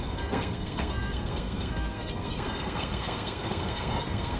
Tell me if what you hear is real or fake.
fake